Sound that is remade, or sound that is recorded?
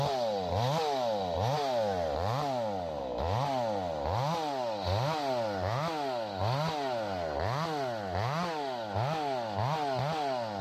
recorded